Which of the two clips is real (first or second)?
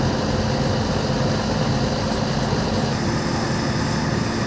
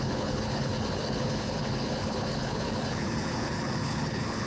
first